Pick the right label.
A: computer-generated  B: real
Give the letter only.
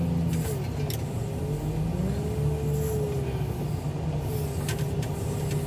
B